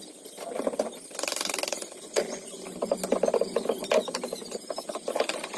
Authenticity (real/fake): real